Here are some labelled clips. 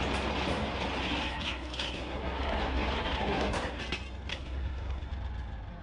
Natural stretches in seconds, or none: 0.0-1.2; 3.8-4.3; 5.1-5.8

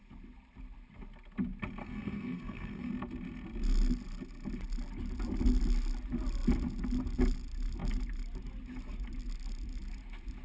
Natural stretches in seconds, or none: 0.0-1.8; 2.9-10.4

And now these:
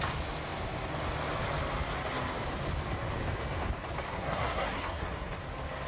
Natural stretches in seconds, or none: 0.0-4.1; 5.4-5.9

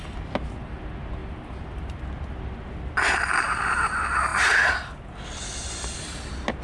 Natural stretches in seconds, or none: 0.0-6.6

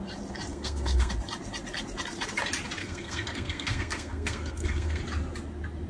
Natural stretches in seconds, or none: 0.0-0.5; 1.1-2.8; 5.0-5.9